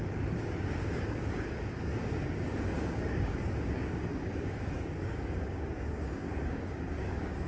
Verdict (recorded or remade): remade